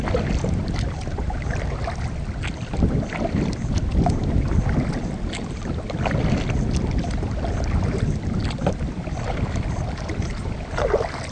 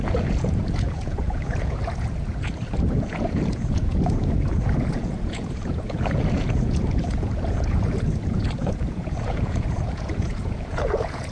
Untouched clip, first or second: first